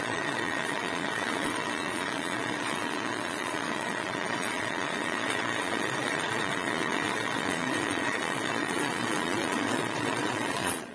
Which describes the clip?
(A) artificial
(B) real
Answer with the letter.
A